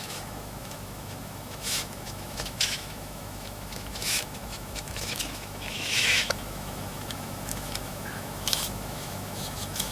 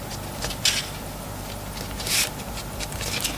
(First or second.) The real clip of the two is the second